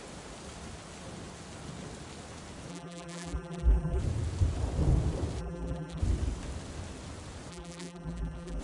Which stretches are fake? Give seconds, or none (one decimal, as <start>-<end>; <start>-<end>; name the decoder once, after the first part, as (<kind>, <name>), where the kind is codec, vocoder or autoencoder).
2.7-4.0 (vocoder, BigVGAN v2); 5.4-6.0; 7.5-8.6